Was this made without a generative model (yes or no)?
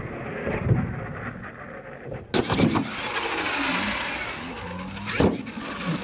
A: yes